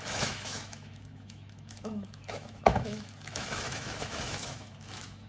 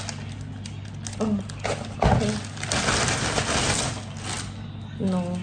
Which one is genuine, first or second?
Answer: second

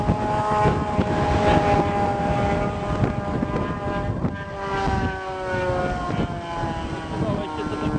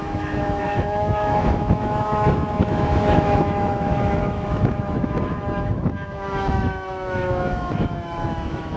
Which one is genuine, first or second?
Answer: first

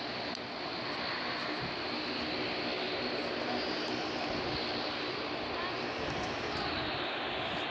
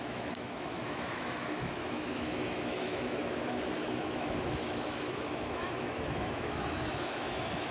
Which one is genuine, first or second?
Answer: first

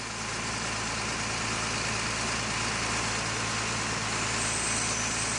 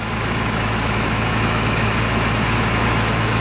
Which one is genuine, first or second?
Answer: first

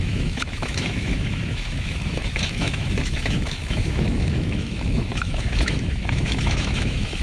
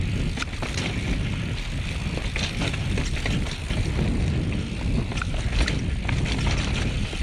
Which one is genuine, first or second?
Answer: second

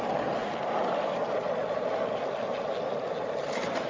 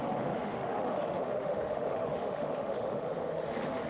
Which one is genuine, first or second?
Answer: first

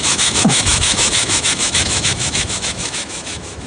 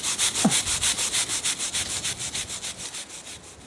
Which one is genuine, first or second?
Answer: second